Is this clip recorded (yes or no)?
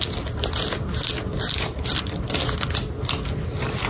yes